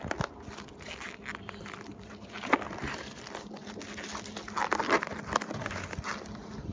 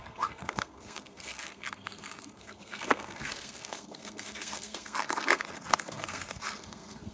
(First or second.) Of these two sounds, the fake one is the second